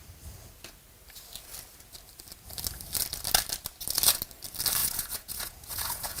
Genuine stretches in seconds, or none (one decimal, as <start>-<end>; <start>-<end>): 0.0-4.8